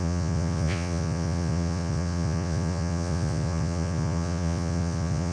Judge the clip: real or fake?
fake